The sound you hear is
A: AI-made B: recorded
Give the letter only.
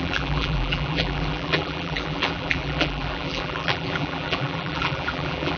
A